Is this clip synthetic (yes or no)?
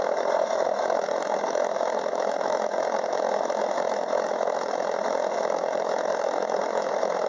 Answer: yes